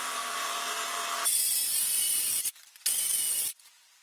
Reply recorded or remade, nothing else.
remade